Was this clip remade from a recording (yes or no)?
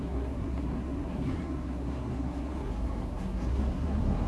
yes